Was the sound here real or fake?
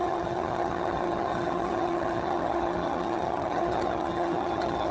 fake